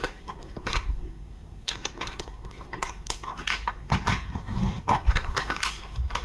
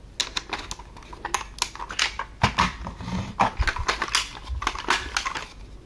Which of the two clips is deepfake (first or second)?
first